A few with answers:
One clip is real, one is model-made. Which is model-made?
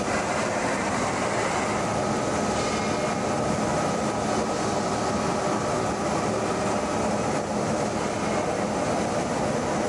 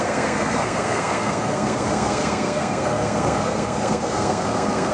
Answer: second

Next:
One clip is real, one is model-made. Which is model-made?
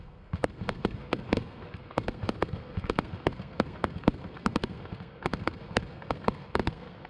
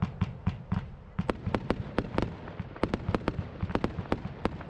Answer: first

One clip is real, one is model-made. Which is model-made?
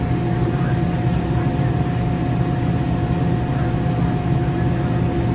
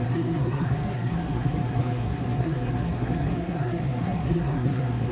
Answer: second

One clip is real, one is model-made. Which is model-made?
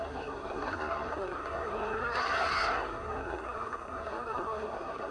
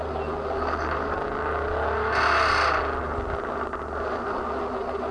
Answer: first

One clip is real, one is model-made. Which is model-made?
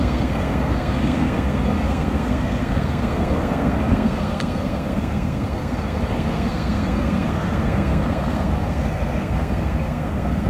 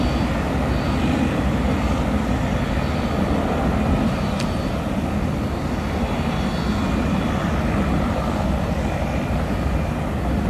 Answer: first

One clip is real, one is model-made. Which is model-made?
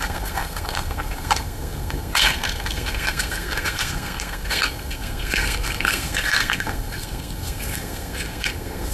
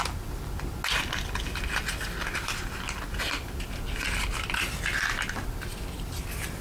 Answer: first